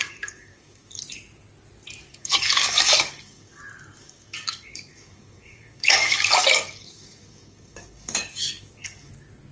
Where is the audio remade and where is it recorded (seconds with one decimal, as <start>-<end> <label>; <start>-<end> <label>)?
0.0-1.0 remade; 1.0-2.1 recorded; 2.1-3.6 remade; 3.6-4.0 recorded; 4.0-9.1 remade; 9.1-9.5 recorded